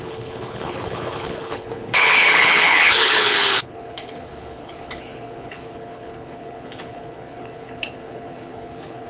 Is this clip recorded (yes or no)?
no